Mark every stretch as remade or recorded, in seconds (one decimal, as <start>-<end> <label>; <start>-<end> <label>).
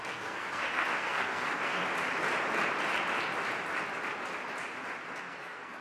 0.0-1.8 remade; 1.8-5.2 recorded; 5.2-5.8 remade